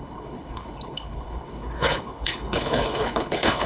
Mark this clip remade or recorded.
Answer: remade